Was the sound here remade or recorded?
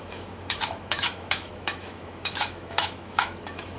remade